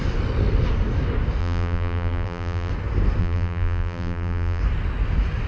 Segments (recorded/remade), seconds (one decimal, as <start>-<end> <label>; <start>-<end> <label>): 0.0-1.4 recorded; 1.4-2.7 remade; 2.7-3.2 recorded; 3.2-4.6 remade; 4.6-5.5 recorded